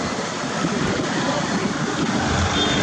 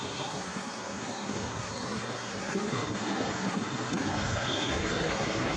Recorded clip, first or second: first